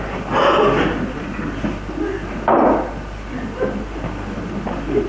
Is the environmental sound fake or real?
real